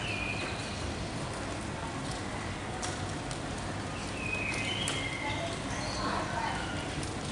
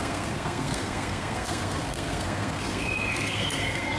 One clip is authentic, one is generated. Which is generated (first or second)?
second